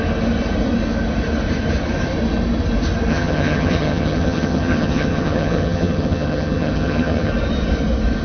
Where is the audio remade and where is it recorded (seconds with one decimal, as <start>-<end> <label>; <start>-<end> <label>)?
0.0-3.1 recorded; 3.1-7.3 remade; 7.3-8.2 recorded